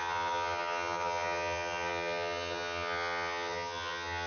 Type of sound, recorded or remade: remade